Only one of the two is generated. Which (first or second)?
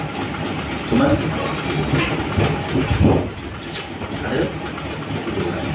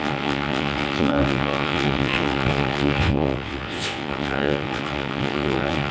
second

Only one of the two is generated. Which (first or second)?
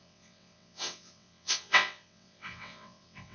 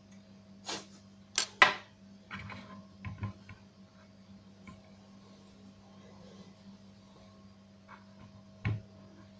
first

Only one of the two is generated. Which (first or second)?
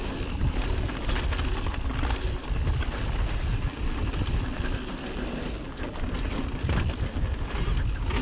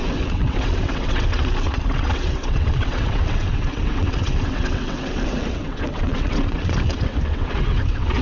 second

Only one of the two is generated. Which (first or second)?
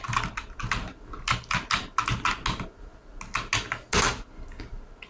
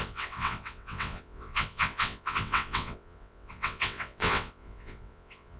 second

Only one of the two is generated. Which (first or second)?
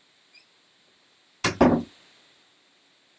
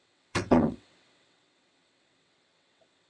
second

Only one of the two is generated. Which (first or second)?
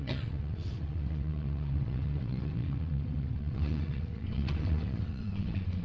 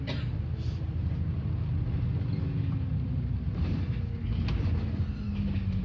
first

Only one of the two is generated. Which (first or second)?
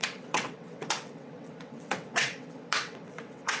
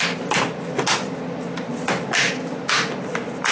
first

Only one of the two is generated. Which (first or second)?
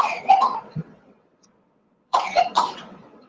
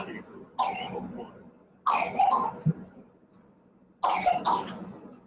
first